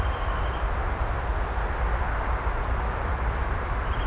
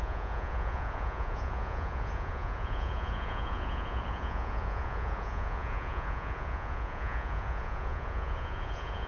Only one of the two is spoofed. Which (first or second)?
second